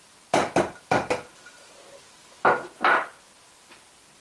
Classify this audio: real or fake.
real